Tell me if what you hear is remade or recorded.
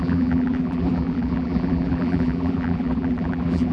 remade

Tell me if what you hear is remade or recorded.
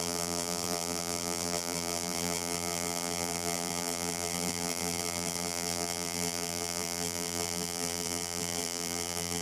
remade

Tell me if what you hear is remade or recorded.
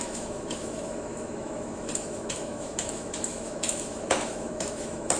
remade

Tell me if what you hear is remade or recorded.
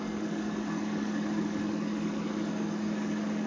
remade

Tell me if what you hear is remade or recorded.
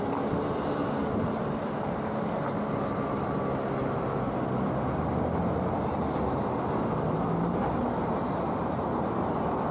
recorded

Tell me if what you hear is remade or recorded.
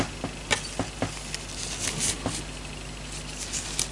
recorded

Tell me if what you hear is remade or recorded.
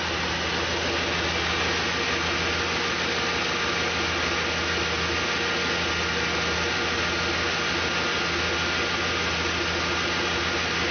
recorded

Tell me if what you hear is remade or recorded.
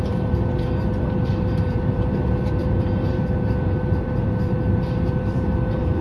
remade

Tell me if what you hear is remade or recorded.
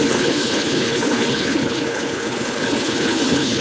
remade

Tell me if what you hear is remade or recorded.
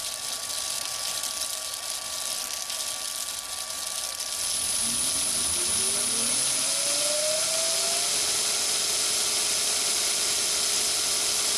recorded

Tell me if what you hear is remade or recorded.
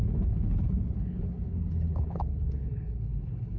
remade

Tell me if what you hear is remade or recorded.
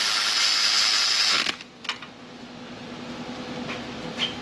recorded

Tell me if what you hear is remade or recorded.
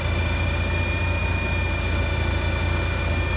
recorded